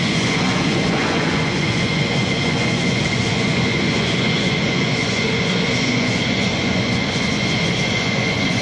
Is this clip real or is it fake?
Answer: fake